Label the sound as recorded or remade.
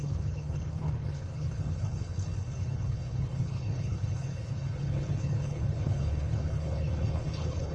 remade